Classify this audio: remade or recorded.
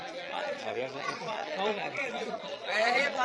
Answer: remade